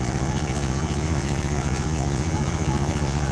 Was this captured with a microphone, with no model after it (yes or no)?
no